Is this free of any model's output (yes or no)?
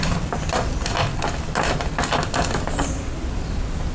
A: yes